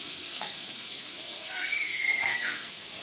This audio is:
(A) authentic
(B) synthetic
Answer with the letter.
B